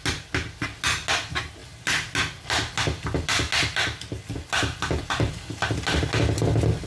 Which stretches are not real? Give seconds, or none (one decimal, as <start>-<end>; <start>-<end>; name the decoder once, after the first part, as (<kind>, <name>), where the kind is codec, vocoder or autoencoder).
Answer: none

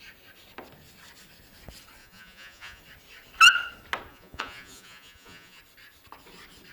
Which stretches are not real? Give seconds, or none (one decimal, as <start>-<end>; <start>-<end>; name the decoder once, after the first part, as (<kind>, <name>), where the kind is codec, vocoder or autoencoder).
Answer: 2.0-2.8 (vocoder, Vocos); 4.1-5.6

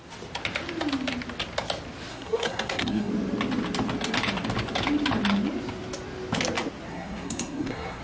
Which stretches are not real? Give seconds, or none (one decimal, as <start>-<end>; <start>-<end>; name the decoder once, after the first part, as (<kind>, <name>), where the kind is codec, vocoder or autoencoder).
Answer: 2.1-3.1 (codec, SNAC); 6.9-8.0

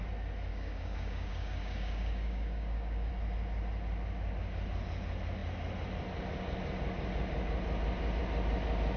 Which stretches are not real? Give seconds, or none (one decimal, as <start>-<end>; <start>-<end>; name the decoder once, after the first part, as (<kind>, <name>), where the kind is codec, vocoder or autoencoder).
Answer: 0.5-3.1 (codec, DAC)

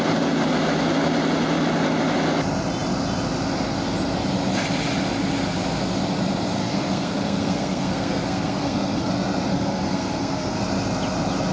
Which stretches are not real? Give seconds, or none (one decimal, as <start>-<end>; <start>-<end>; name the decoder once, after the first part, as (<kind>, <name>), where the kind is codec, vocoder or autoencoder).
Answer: 6.6-9.1 (codec, SNAC); 9.5-10.6